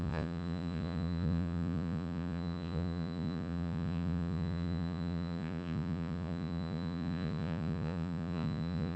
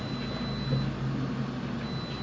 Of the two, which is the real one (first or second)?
second